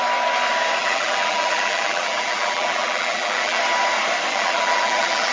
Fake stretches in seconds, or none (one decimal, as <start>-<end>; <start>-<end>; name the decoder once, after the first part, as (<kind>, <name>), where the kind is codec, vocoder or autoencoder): 0.8-3.6 (vocoder, BigVGAN v2); 4.3-5.3